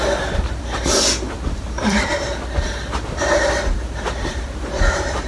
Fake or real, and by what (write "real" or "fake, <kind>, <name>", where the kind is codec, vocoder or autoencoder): fake, vocoder, BigVGAN v2